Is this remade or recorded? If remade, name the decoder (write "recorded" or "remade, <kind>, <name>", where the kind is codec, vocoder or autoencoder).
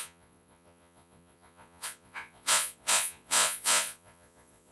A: remade, vocoder, Vocos